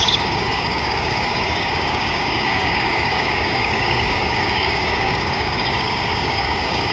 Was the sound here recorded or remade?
remade